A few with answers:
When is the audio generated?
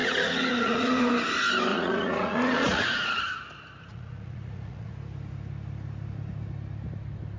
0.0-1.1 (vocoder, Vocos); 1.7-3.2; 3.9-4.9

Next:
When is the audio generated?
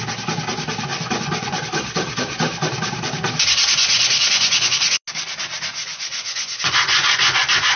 0.9-1.6 (vocoder, Vocos); 3.8-5.0; 5.7-7.8